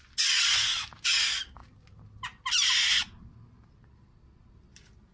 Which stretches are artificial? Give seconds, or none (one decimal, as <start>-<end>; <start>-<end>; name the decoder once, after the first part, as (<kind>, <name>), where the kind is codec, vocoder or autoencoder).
none